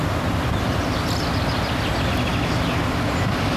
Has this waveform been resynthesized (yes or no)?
no